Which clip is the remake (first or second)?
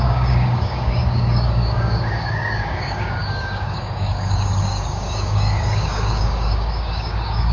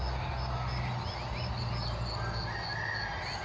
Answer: first